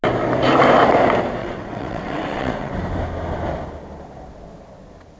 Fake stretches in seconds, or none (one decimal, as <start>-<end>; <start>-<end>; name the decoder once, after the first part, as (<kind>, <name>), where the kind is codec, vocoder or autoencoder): 1.4-2.7 (vocoder, WaveNeXt)